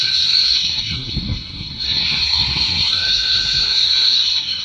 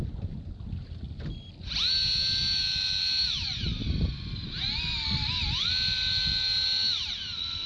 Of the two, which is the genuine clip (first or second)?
second